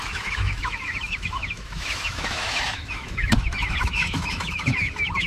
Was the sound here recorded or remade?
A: remade